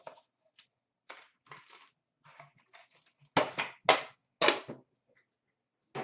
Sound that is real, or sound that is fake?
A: real